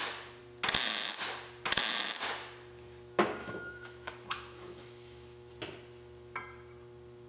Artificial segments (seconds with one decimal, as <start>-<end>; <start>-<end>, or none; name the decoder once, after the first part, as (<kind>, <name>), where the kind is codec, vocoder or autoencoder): 3.4-5.5 (autoencoder, DAC-VAE)